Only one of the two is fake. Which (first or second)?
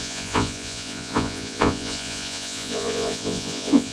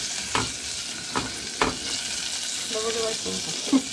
first